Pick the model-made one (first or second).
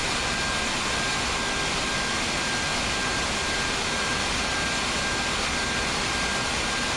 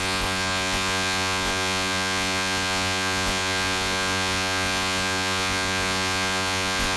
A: second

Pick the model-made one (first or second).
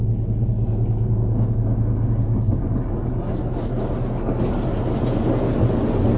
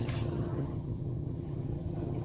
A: second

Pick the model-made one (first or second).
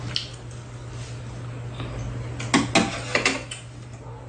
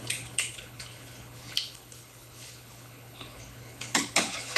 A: second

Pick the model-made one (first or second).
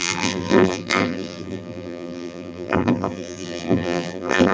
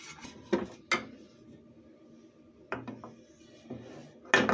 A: first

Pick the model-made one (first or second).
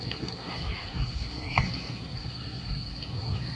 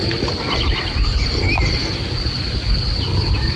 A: first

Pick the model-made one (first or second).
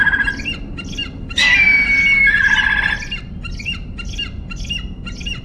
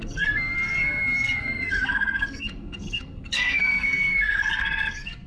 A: second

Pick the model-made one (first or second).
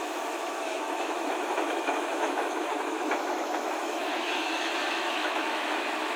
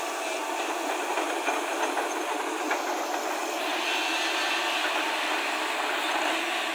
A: first